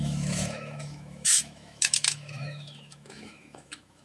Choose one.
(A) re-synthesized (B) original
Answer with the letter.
A